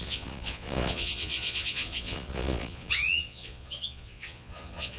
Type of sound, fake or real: fake